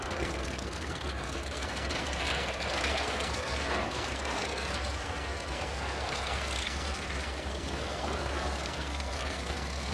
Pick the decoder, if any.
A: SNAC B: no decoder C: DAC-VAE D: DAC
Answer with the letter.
A